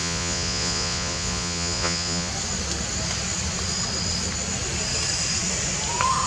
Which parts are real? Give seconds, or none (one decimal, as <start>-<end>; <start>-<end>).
2.3-6.3